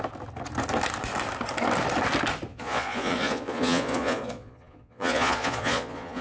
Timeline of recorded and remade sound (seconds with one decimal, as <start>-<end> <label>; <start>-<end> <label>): 0.0-2.5 recorded; 2.5-6.2 remade